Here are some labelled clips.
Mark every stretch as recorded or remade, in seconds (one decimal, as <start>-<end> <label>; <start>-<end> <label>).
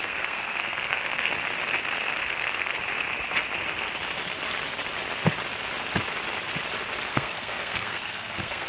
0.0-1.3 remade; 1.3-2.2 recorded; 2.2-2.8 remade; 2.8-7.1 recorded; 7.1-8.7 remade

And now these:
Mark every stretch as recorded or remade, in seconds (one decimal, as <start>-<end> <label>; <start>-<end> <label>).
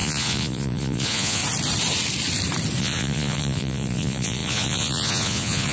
0.0-1.4 remade; 1.4-2.8 recorded; 2.8-5.7 remade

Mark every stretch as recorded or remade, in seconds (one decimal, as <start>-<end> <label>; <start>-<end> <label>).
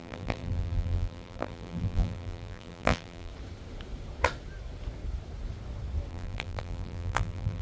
0.0-3.3 remade; 3.3-6.1 recorded; 6.1-7.6 remade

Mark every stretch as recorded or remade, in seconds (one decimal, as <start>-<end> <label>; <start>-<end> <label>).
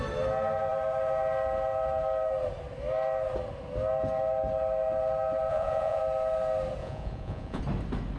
0.0-5.5 recorded; 5.5-6.0 remade; 6.0-6.8 recorded; 6.8-7.6 remade; 7.6-8.2 recorded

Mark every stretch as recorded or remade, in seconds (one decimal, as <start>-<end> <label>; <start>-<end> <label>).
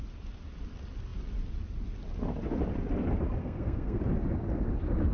0.0-3.4 recorded; 3.4-4.0 remade; 4.0-5.1 recorded